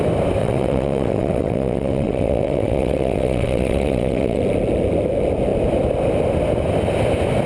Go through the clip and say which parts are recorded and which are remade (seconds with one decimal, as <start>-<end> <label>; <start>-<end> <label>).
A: 0.0-0.4 recorded; 0.4-4.4 remade; 4.4-7.5 recorded